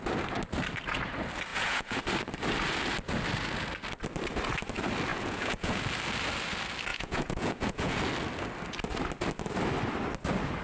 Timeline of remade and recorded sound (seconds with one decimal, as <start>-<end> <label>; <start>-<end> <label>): 0.0-1.5 recorded; 1.5-2.0 remade; 2.0-5.1 recorded; 5.1-5.8 remade; 5.8-6.9 recorded; 6.9-8.0 remade; 8.0-10.6 recorded